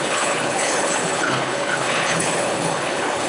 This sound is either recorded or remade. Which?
remade